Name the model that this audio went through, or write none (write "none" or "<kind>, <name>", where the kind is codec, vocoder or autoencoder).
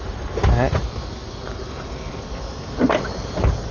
none